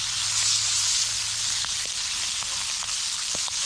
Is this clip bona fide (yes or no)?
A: yes